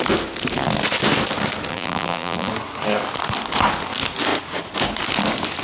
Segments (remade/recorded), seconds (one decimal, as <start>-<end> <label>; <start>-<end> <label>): 0.0-1.7 recorded; 1.7-2.5 remade; 2.5-5.6 recorded